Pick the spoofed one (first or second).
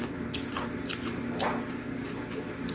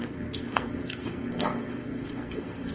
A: second